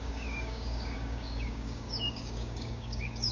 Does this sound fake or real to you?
fake